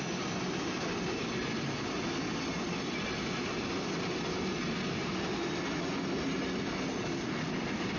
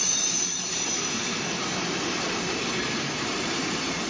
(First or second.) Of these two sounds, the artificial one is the second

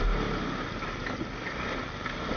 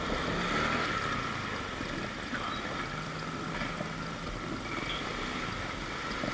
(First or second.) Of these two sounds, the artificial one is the second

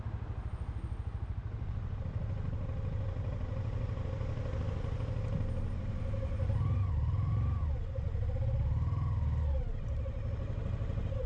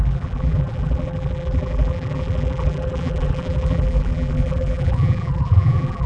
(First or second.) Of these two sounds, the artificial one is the second